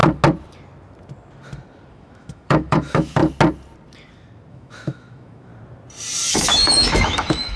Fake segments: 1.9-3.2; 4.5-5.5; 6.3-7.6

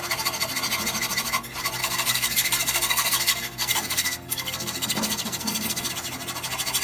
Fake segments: 1.8-5.9